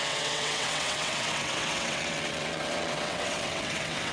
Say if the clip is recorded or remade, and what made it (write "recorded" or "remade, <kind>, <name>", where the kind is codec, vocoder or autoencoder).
remade, vocoder, WaveNeXt